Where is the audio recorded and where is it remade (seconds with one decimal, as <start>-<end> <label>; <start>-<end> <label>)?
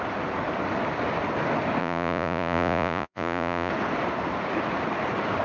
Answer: 0.0-1.8 recorded; 1.8-3.7 remade; 3.7-5.4 recorded